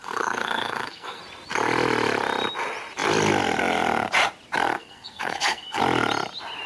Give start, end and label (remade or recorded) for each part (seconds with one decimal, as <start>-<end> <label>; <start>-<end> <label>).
0.0-1.2 remade; 1.2-4.7 recorded; 4.7-5.8 remade; 5.8-6.7 recorded